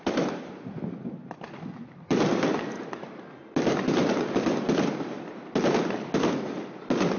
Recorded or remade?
recorded